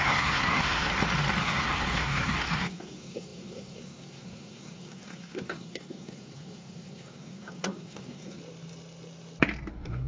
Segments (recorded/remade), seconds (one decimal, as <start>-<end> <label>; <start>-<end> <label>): 0.0-0.9 remade; 0.9-1.4 recorded; 1.4-8.4 remade; 8.4-9.7 recorded; 9.7-10.1 remade